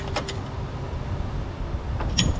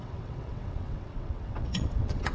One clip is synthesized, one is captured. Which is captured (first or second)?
first